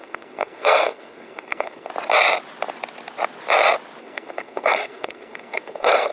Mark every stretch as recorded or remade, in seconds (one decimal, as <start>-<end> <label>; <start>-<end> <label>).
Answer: 0.0-1.9 remade; 1.9-4.0 recorded; 4.0-6.1 remade